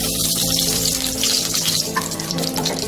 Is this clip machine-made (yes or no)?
yes